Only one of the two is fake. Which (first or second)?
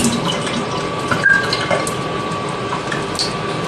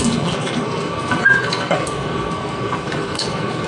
second